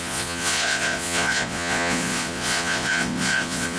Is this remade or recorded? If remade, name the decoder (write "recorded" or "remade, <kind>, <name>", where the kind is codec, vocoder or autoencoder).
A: remade, vocoder, Vocos